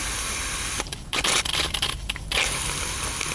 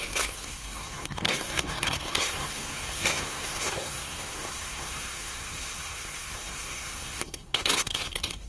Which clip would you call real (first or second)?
first